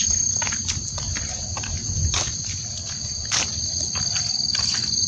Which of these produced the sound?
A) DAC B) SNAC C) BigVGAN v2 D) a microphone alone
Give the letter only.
D